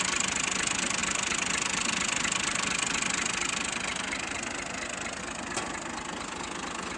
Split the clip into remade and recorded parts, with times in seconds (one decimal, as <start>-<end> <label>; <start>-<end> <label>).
0.0-7.0 recorded